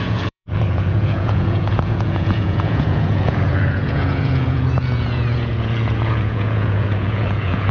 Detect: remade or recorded remade